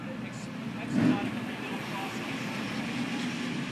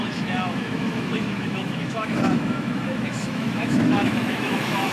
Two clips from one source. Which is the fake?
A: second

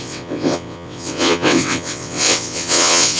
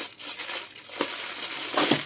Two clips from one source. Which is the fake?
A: first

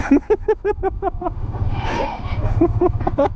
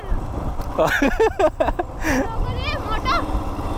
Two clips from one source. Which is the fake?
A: first